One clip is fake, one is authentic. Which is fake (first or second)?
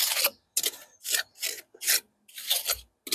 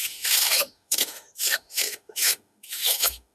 second